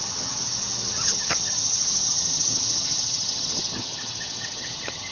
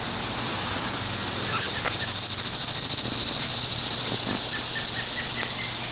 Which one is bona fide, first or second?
second